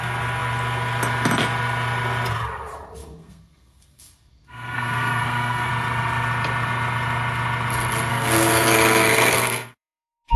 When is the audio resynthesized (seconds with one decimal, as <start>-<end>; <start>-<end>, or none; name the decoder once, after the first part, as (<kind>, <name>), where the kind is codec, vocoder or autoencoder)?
3.0-5.7 (codec, SNAC); 8.1-10.4